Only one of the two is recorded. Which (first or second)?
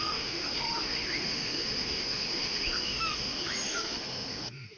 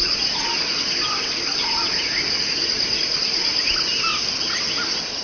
second